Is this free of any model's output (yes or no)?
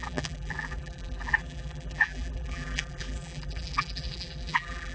no